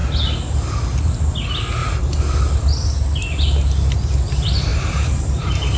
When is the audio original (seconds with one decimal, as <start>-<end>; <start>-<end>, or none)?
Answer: 0.0-1.8; 2.4-4.7